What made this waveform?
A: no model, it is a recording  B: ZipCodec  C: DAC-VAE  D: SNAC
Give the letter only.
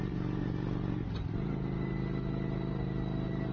A